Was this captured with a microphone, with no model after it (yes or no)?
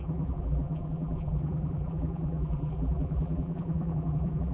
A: no